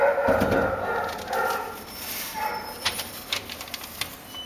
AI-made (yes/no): no